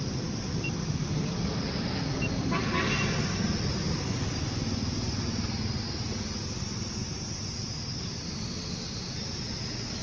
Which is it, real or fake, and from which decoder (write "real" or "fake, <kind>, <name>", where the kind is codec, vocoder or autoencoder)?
real